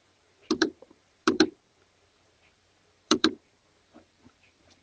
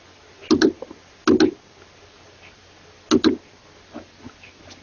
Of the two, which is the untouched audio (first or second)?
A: second